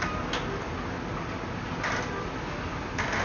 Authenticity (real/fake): real